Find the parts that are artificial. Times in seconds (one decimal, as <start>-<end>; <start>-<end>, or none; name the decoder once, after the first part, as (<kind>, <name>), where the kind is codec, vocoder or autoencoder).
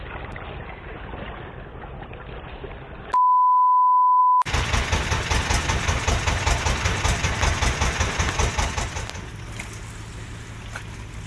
none